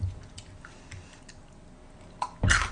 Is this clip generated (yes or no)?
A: no